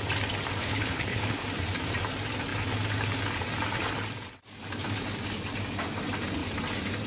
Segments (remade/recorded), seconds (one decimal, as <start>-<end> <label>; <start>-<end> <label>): 0.0-0.6 recorded; 0.6-1.4 remade; 1.4-7.1 recorded